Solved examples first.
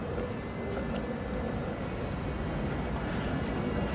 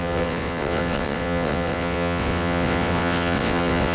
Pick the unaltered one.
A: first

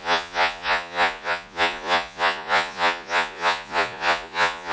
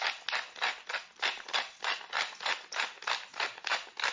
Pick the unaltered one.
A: second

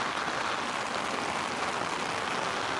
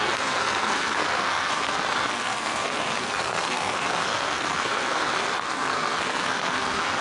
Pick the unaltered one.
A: first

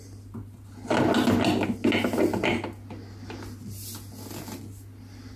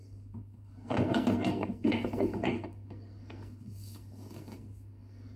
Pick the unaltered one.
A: first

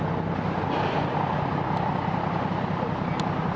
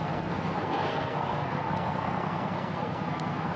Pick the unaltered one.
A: first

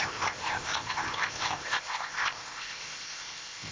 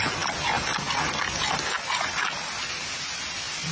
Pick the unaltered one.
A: second